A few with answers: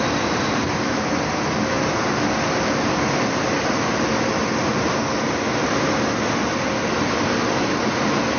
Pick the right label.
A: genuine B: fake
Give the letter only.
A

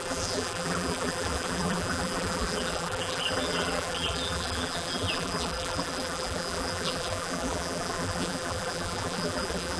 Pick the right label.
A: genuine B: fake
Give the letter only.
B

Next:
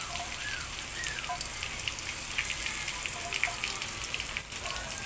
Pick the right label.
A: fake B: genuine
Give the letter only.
A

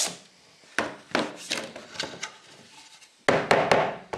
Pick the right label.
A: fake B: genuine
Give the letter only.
B